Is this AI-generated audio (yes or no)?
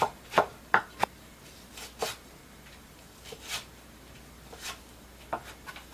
yes